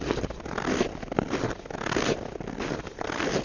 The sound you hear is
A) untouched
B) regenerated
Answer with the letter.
A